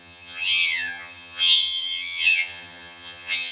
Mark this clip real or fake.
fake